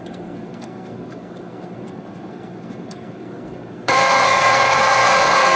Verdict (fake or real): fake